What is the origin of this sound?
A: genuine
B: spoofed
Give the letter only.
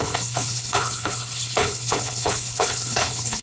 B